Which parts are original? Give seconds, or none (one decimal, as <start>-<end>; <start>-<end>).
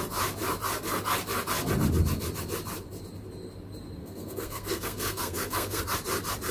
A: 0.0-4.0; 5.8-6.5